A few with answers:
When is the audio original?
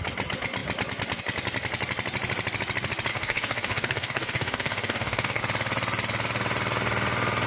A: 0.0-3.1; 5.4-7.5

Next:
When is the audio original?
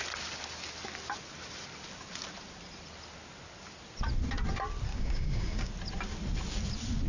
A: 0.0-4.9; 5.7-7.1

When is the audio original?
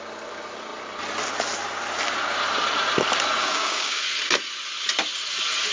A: 0.0-3.4; 4.0-5.7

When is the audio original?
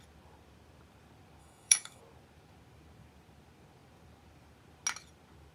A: 0.0-1.4; 2.0-5.5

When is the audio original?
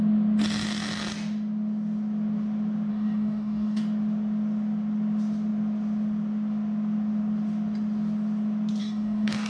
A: 0.0-2.9; 3.8-8.8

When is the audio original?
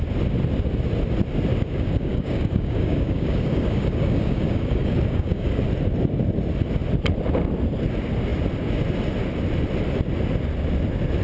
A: 0.0-1.5; 5.6-11.2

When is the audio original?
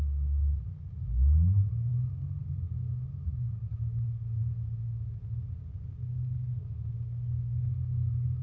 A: 0.0-1.9; 4.4-6.1; 6.9-8.4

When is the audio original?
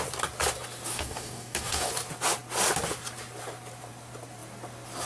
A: 0.0-0.9; 1.9-5.1